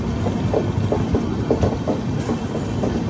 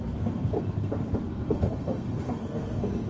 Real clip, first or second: first